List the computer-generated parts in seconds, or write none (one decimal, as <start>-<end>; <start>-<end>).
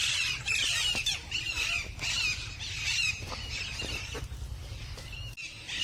none